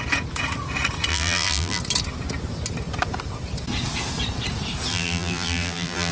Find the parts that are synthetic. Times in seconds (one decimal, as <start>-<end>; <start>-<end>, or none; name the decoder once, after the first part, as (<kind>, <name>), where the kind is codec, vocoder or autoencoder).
1.1-1.8 (vocoder, BigVGAN v2); 4.9-6.1